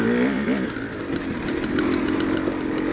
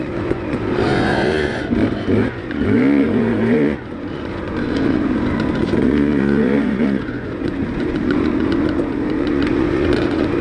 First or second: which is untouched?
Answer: first